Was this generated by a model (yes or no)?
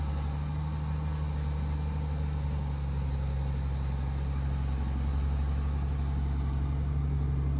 no